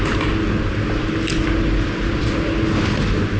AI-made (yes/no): no